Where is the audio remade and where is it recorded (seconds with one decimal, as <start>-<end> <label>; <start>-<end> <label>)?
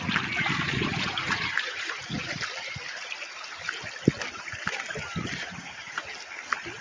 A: 0.0-0.8 recorded; 0.8-2.4 remade; 2.4-5.4 recorded; 5.4-6.0 remade; 6.0-6.8 recorded